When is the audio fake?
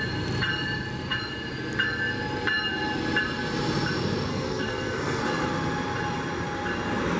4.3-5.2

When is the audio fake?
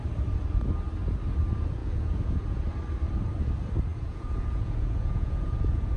1.8-2.6; 3.9-6.0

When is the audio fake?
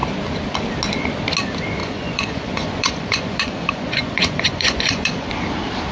1.8-5.3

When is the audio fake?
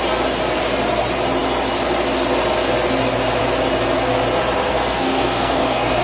4.6-6.0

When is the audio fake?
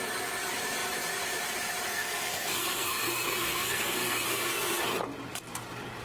1.9-4.8